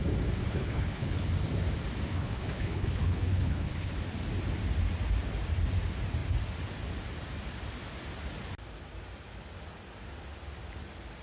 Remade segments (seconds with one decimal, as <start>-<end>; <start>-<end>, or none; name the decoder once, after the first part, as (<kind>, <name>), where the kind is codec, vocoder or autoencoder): 0.4-1.3 (codec, HILCodec); 2.1-3.9